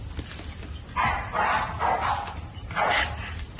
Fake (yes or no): no